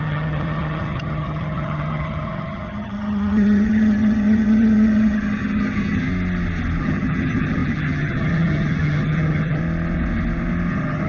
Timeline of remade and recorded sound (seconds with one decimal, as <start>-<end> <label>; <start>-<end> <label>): 0.0-6.1 remade; 6.1-6.8 recorded; 6.8-9.6 remade; 9.6-10.7 recorded; 10.7-11.1 remade